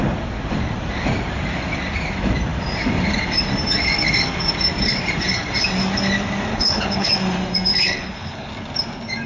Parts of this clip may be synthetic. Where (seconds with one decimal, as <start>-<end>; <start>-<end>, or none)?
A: 6.5-7.1; 7.7-8.5